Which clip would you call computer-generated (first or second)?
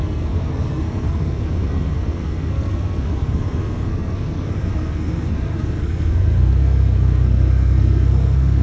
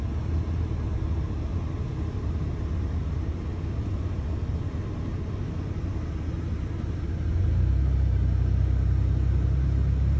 first